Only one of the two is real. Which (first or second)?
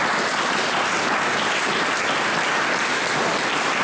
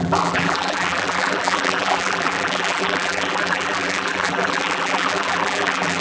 first